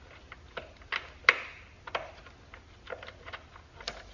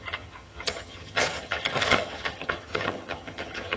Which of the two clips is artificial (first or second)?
second